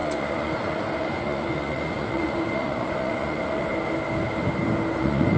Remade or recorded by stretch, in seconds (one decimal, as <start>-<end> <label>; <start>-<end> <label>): 0.0-3.7 remade; 3.7-5.0 recorded; 5.0-5.4 remade